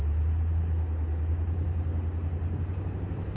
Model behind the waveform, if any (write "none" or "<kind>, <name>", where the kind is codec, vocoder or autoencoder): none